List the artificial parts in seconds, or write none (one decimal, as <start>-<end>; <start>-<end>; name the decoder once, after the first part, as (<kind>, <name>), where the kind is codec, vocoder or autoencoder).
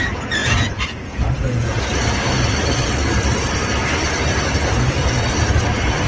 0.4-1.8 (vocoder, Vocos)